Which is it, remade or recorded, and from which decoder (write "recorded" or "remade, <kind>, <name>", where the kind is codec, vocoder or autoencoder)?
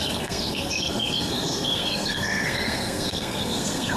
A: remade, codec, SNAC